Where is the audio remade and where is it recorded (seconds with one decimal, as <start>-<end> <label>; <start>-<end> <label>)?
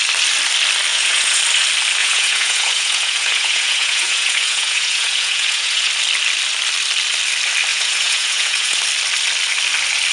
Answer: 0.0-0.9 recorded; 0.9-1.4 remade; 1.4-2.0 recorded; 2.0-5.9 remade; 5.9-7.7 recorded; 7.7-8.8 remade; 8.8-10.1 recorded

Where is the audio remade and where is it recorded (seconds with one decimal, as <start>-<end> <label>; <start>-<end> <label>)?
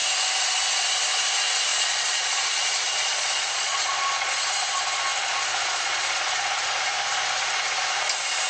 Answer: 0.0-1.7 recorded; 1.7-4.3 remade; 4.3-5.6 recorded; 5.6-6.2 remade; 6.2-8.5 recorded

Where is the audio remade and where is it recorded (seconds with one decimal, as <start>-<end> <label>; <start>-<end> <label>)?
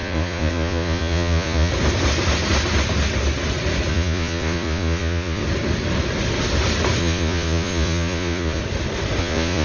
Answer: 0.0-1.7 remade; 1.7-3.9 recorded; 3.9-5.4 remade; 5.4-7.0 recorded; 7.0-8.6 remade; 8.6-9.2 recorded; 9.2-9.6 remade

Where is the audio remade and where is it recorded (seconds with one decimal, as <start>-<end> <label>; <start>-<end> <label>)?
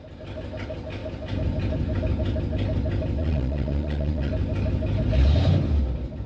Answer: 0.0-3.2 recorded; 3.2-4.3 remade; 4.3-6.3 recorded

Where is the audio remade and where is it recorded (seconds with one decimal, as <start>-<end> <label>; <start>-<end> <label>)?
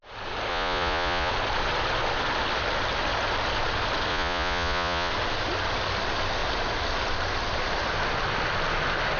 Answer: 0.0-0.5 recorded; 0.5-1.3 remade; 1.3-4.1 recorded; 4.1-5.1 remade; 5.1-9.2 recorded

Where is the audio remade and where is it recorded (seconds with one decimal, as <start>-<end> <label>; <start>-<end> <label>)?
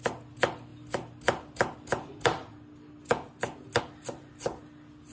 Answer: 0.0-5.1 recorded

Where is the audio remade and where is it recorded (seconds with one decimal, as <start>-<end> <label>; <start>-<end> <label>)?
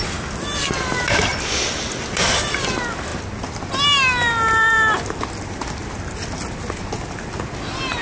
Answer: 0.0-8.0 recorded